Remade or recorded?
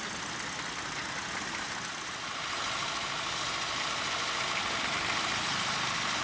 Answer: recorded